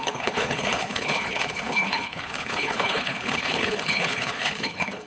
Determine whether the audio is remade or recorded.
remade